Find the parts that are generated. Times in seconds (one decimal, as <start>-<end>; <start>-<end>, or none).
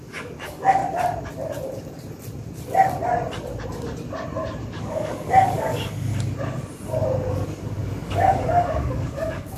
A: 0.0-0.8; 4.7-6.1; 7.3-9.6